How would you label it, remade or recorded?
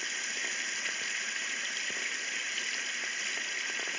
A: recorded